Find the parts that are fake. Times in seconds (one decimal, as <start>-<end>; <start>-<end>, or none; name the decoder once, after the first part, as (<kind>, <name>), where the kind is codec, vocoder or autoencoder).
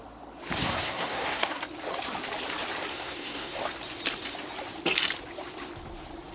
0.6-1.6 (codec, SNAC); 2.9-3.6